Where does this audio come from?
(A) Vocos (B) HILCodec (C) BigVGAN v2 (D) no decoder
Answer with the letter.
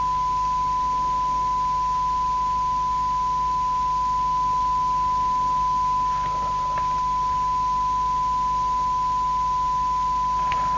D